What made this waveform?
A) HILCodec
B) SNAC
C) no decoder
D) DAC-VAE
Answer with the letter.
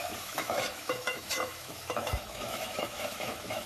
D